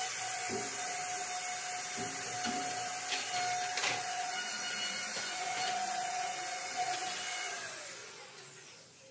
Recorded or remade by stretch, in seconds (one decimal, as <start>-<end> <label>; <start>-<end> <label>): 0.0-1.0 remade; 1.0-4.0 recorded; 4.0-9.1 remade